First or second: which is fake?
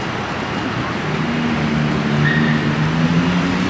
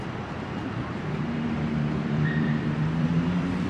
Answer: second